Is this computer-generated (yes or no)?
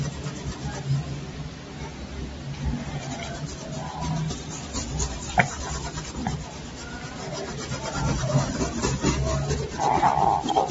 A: no